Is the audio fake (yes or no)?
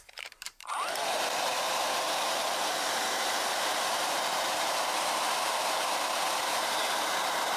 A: yes